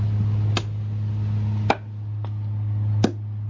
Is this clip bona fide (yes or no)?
yes